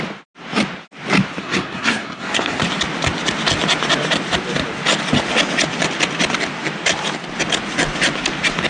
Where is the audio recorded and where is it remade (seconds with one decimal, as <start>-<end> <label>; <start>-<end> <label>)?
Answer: 0.0-1.4 recorded; 1.4-2.6 remade; 2.6-8.7 recorded